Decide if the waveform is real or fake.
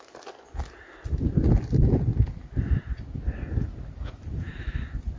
real